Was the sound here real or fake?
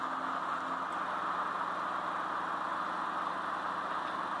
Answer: real